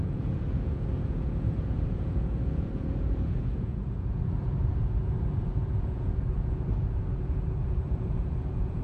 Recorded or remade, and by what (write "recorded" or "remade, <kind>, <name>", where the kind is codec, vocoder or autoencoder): remade, vocoder, Vocos